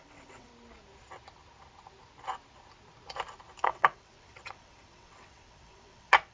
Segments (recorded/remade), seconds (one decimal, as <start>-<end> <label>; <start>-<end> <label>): 0.0-0.5 remade; 0.5-3.6 recorded; 3.6-6.3 remade

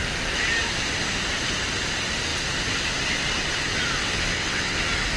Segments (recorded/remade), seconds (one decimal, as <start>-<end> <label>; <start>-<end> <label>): 0.0-4.0 recorded; 4.0-4.8 remade; 4.8-5.2 recorded

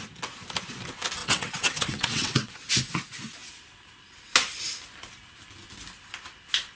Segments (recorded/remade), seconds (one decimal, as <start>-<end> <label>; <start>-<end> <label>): 0.0-1.2 recorded; 1.2-2.5 remade; 2.5-6.8 recorded

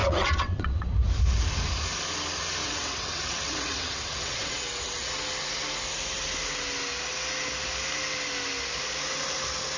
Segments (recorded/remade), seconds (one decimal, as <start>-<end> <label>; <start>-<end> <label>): 0.0-0.9 remade; 0.9-2.6 recorded; 2.6-5.1 remade; 5.1-9.8 recorded

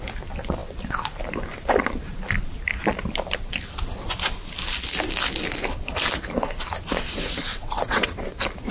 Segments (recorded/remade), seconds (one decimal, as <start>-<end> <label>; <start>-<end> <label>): 0.0-7.5 recorded; 7.5-8.2 remade; 8.2-8.7 recorded

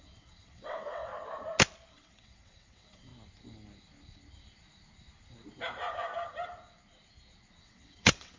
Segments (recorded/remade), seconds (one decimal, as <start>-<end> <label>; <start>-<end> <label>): 0.0-1.1 remade; 1.1-1.9 recorded; 1.9-3.1 remade; 3.1-7.6 recorded; 7.6-8.4 remade

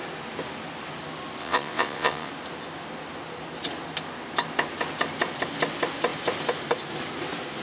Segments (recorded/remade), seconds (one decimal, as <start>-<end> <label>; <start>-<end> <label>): 0.0-1.4 recorded; 1.4-2.3 remade; 2.3-7.6 recorded

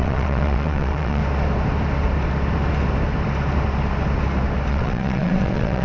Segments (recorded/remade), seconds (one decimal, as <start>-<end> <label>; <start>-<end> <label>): 0.0-1.2 remade; 1.2-4.7 recorded; 4.7-5.8 remade